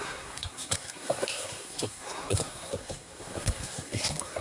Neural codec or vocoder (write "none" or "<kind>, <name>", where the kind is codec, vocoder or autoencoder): codec, SNAC